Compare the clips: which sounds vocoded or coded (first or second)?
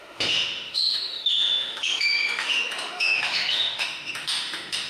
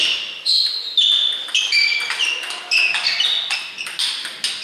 first